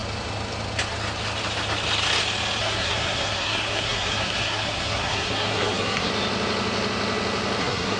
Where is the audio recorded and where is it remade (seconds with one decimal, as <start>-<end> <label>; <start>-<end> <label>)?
0.0-2.6 recorded; 2.6-6.1 remade; 6.1-7.6 recorded; 7.6-8.0 remade